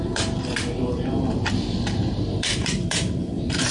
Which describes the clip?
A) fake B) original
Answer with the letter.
A